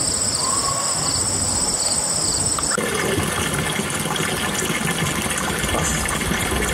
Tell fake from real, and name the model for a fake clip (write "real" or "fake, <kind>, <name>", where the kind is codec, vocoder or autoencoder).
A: real